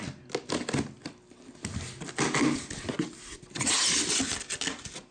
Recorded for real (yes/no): yes